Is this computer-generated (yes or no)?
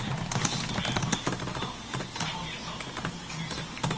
no